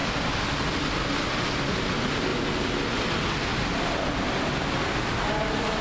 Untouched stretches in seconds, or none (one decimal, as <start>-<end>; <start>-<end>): 1.1-2.3; 3.1-5.8